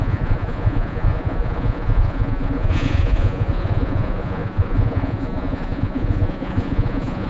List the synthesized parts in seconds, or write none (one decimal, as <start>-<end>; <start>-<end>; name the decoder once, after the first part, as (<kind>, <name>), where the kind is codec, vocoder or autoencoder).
0.0-7.3 (vocoder, Vocos)